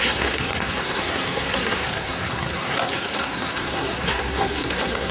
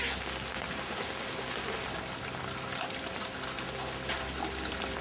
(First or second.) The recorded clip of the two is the second